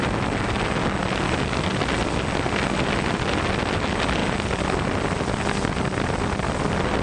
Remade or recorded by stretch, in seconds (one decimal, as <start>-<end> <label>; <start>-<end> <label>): 0.0-7.0 recorded